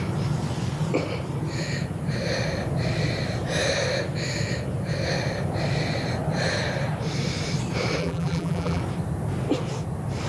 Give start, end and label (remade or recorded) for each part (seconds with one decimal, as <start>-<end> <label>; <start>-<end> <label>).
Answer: 0.0-8.0 recorded; 8.0-8.8 remade; 8.8-10.3 recorded